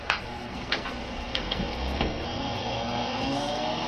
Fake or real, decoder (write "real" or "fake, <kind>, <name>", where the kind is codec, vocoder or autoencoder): fake, codec, SNAC